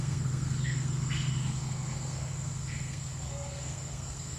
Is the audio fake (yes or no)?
yes